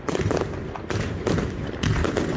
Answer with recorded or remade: recorded